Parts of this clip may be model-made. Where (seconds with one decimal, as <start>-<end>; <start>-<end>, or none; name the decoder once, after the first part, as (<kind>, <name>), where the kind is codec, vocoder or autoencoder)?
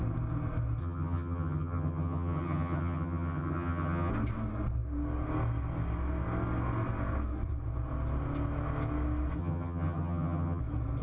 0.8-4.1 (vocoder, HiFi-GAN); 9.4-10.6